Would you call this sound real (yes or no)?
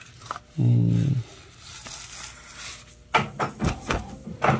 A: yes